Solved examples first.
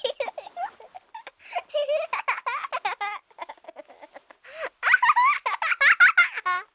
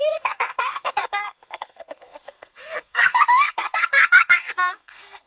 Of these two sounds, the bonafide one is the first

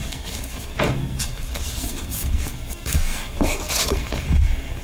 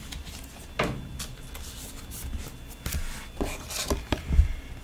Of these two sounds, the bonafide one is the second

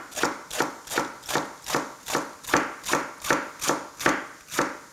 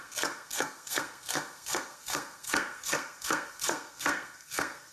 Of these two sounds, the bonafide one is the first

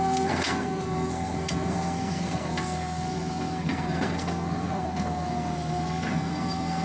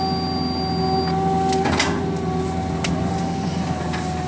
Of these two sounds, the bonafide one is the second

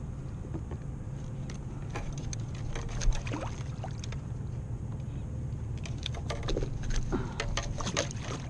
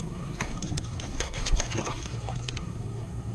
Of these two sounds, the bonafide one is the first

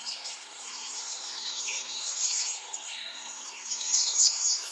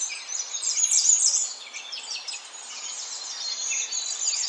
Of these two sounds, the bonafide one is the second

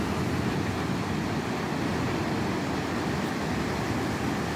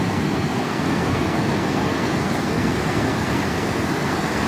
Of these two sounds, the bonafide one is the first